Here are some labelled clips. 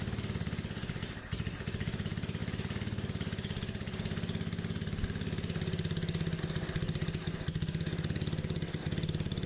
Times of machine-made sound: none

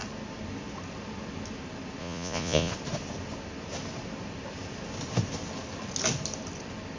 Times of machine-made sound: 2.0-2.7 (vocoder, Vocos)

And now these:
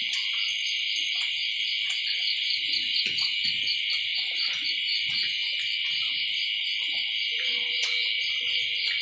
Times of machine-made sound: none

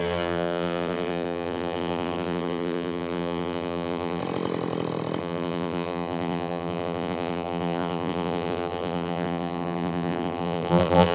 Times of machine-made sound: 0.0-4.2 (vocoder, BigVGAN v2); 5.2-11.1

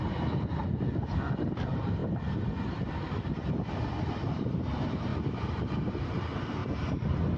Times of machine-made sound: 0.0-0.6 (vocoder, BigVGAN v2); 1.4-2.0; 4.1-5.1; 5.9-6.6